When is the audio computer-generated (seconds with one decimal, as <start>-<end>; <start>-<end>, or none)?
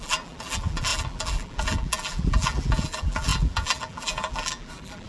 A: 0.0-5.1